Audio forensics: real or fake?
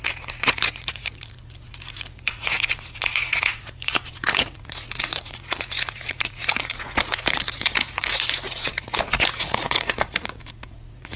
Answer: fake